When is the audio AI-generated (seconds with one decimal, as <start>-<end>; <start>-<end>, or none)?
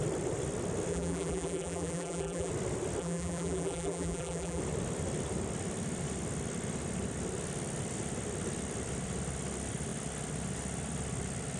0.9-2.5; 3.0-4.6